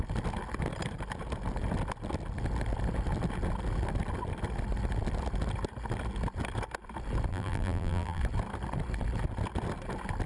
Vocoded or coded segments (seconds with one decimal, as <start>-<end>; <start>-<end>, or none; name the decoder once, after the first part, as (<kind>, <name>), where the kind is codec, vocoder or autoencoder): 7.3-8.2 (vocoder, BigVGAN v2)